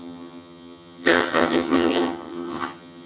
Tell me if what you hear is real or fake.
fake